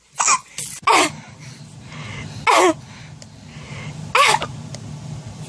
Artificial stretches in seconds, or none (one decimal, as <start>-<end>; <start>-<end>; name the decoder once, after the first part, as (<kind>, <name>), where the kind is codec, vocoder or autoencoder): none